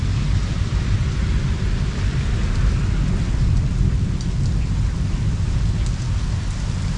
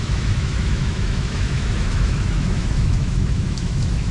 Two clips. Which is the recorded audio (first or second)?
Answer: first